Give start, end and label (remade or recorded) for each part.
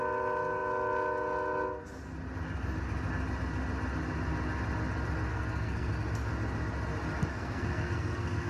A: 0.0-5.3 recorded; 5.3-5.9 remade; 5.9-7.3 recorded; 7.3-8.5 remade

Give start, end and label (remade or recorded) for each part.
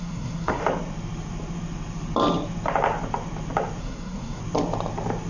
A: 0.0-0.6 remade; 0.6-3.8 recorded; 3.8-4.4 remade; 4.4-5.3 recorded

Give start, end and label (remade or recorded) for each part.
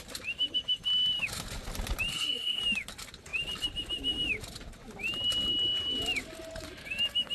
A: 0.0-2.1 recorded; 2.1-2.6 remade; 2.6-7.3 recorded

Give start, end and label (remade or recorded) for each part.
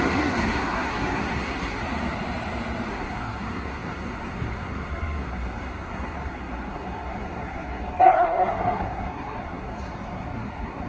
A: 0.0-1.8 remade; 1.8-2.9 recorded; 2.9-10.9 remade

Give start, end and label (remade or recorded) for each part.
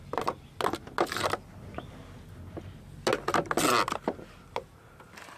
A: 0.0-5.4 recorded